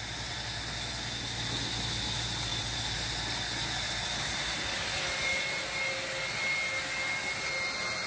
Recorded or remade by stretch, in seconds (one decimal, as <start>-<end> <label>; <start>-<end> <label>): 0.0-8.1 recorded